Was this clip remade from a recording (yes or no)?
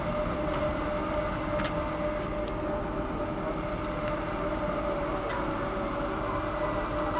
no